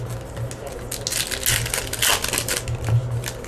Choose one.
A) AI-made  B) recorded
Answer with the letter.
B